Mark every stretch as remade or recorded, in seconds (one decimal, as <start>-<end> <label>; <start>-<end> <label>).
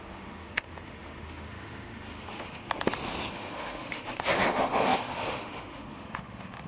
0.0-2.6 remade; 2.6-3.3 recorded; 3.3-6.7 remade